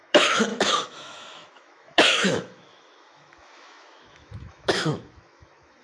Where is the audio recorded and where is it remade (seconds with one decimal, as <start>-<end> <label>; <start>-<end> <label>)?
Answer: 0.0-5.8 remade